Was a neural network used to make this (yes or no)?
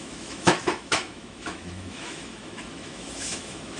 yes